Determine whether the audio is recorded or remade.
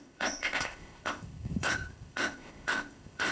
remade